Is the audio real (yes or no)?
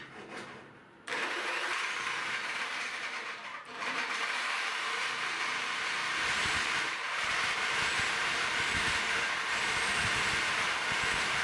no